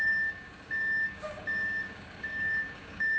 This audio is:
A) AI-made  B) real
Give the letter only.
A